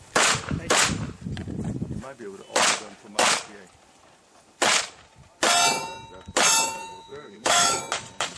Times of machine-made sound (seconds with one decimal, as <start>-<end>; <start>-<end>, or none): 6.8-7.8